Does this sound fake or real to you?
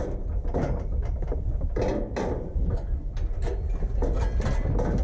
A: real